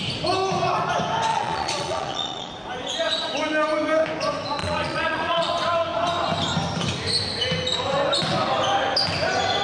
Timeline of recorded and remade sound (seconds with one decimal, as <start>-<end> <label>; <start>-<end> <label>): 0.0-1.3 recorded; 1.3-2.5 remade; 2.5-4.6 recorded; 4.6-5.5 remade; 5.5-9.6 recorded